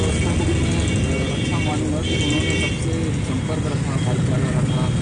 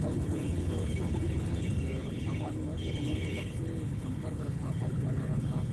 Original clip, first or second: first